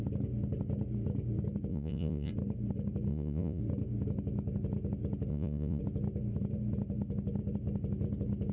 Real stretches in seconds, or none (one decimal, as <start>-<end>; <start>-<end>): 0.0-1.7; 2.3-3.1; 3.6-5.3; 5.8-8.5